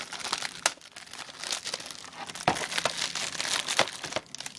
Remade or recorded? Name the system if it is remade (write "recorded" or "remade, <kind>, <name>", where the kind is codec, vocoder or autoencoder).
recorded